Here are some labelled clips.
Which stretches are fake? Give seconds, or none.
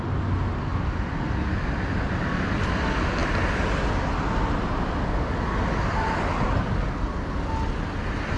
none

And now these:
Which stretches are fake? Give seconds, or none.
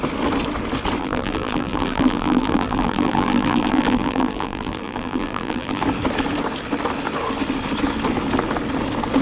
1.0-5.8 (vocoder, BigVGAN v2)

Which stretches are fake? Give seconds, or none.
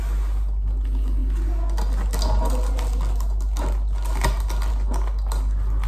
none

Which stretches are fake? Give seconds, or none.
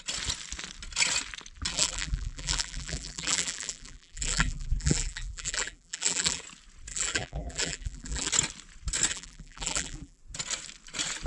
1.7-6.4 (vocoder, BigVGAN v2); 6.9-8.3; 9.1-10.2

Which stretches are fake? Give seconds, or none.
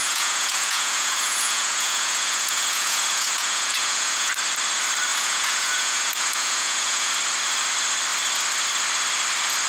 0.0-4.3 (vocoder, Vocos); 5.1-7.1